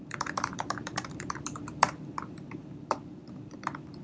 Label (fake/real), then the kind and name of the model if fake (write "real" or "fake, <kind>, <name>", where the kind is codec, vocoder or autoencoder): fake, vocoder, BigVGAN v2